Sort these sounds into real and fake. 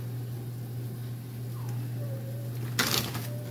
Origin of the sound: real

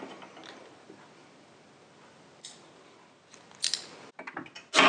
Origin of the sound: real